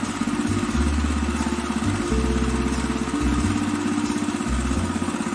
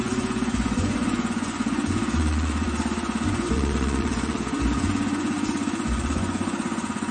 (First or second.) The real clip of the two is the first